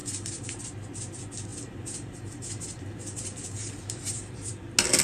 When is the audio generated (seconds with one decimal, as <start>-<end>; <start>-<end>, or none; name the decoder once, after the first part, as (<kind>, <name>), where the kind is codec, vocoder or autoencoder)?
0.0-0.6 (vocoder, BigVGAN v2); 1.5-4.5